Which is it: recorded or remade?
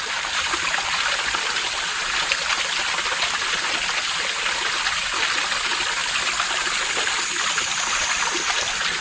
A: recorded